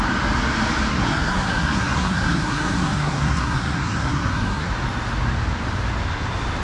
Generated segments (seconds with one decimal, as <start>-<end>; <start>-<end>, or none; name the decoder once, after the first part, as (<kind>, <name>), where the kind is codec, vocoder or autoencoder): 0.9-4.7 (codec, SNAC)